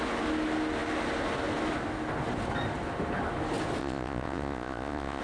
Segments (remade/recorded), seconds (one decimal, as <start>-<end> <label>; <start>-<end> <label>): 0.0-3.8 recorded; 3.8-5.2 remade